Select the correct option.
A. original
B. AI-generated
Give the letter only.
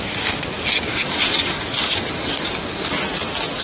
A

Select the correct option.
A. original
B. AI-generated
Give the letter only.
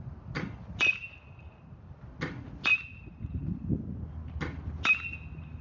A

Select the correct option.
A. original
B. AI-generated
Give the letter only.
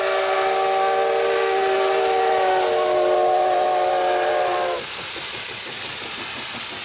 A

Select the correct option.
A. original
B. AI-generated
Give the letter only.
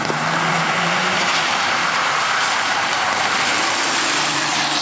B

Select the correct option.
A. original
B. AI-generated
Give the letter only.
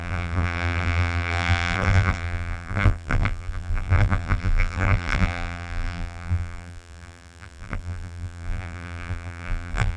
B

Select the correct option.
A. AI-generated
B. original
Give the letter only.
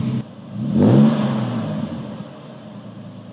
B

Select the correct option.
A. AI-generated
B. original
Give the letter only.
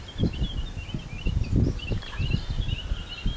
B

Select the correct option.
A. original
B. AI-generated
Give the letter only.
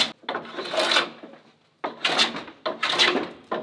A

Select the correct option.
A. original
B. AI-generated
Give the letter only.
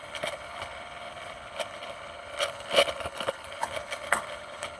B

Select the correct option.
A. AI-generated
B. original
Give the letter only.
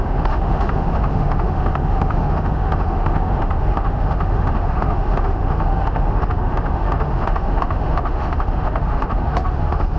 A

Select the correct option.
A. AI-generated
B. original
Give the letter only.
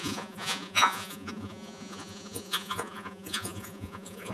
A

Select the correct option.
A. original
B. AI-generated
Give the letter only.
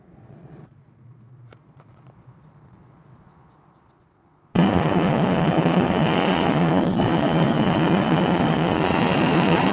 B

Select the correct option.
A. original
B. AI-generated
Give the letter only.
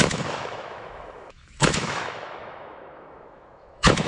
B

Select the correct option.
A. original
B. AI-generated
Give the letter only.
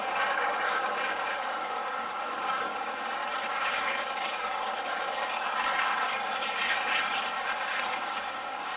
B